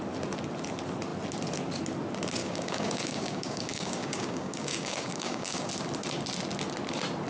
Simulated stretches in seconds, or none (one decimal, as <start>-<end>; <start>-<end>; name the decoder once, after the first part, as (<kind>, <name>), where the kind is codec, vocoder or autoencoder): 2.4-5.7 (codec, DAC)